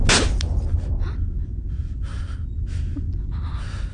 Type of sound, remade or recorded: recorded